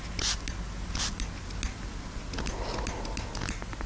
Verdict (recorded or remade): recorded